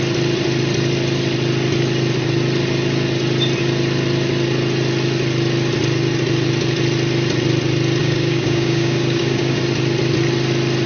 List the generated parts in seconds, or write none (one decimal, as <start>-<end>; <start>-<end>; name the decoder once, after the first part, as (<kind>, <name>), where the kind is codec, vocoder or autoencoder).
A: 8.0-9.6 (codec, DAC)